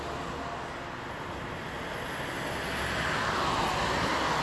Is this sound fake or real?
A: real